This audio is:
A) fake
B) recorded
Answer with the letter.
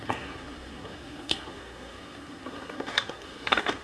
A